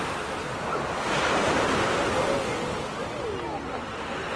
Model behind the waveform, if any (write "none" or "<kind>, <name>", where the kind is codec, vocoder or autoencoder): none